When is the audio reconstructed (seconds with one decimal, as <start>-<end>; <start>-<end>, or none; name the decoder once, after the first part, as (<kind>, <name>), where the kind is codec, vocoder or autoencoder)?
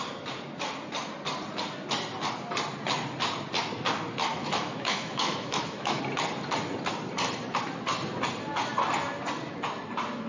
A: 4.4-6.0 (autoencoder, DAC-VAE)